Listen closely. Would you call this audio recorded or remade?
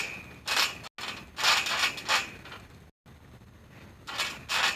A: recorded